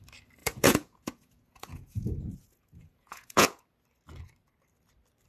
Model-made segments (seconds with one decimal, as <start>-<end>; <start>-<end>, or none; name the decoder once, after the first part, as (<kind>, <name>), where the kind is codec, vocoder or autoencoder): 0.4-3.6 (vocoder, Vocos)